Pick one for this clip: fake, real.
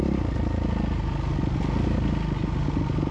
real